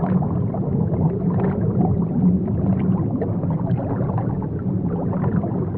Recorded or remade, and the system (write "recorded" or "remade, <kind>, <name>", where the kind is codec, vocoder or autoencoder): recorded